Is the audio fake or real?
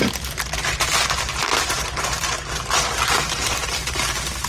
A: fake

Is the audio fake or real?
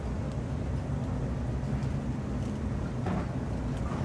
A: real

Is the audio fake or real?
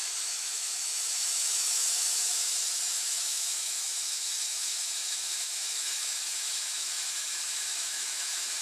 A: fake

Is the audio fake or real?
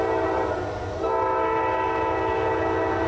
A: real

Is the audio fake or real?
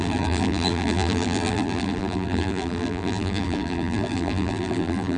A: fake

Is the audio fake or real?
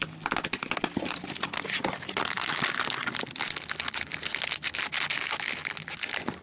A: real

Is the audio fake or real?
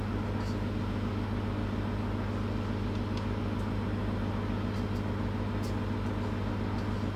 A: real